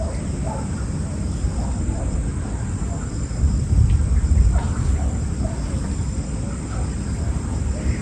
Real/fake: real